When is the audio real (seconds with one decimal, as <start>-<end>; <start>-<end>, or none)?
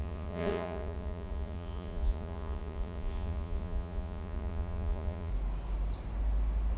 5.3-6.8